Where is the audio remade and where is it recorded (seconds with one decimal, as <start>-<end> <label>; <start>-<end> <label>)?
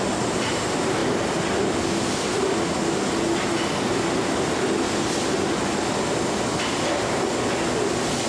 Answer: 0.0-8.3 recorded